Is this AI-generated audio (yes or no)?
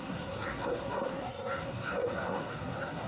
yes